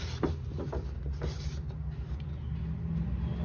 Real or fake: real